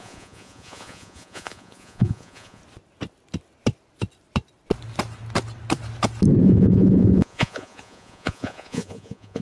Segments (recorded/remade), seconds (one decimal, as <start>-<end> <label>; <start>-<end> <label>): 0.0-2.6 remade; 2.6-6.4 recorded; 6.4-9.4 remade